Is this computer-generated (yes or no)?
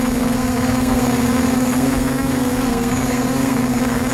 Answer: yes